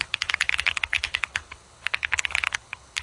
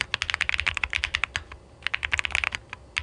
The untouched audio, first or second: second